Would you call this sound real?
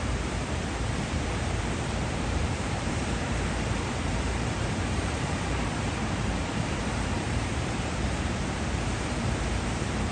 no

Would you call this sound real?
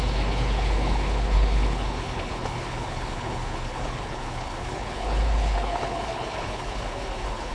no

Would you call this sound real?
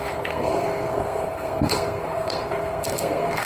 no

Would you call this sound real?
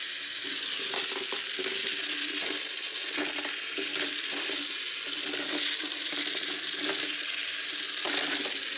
yes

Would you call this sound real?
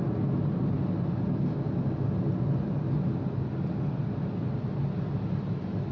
yes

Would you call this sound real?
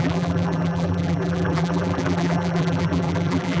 no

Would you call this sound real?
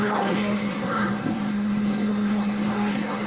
no